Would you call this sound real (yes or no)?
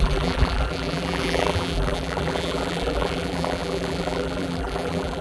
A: no